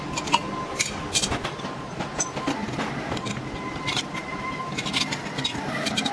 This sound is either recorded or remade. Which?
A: recorded